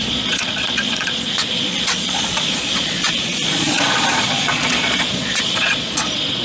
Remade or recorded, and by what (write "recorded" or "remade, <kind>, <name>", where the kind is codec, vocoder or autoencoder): remade, vocoder, Vocos